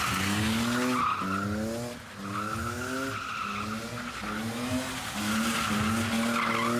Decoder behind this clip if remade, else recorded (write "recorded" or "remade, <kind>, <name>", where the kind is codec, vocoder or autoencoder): recorded